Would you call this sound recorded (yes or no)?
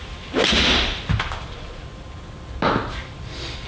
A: yes